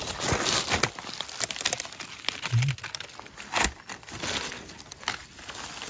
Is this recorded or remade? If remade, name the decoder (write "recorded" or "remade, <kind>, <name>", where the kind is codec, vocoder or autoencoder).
recorded